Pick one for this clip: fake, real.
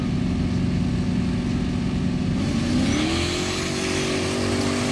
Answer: real